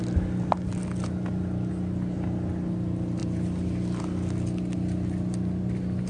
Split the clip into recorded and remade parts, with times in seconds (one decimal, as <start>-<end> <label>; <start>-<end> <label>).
0.0-6.1 recorded